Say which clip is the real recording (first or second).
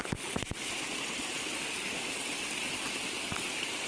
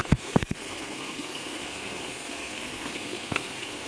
first